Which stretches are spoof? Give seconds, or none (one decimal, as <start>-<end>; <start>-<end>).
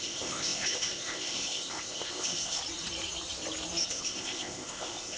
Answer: 0.0-2.6; 3.8-5.2